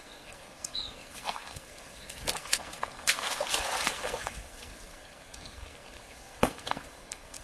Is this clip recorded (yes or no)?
no